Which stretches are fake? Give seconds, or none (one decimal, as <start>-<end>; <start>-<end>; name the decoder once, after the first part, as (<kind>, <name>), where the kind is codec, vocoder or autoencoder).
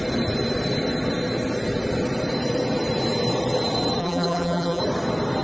4.0-4.8 (vocoder, BigVGAN v2)